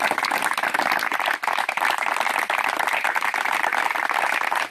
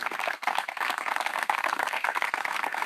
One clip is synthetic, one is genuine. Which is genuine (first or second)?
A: first